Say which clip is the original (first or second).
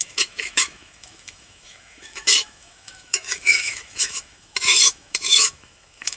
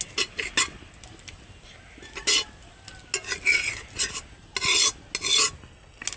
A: second